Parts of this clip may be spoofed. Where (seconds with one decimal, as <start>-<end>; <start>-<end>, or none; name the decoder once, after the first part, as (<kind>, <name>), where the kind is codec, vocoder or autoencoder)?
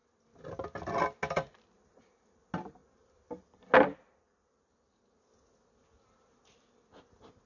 none